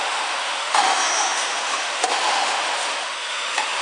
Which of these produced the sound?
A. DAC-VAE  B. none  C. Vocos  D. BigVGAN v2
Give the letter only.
A